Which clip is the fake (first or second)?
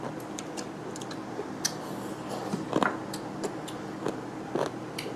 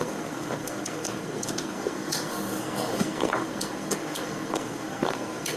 second